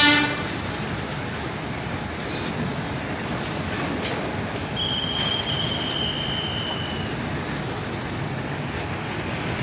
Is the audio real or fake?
real